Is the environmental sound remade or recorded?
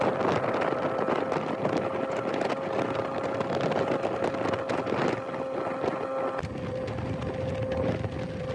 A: recorded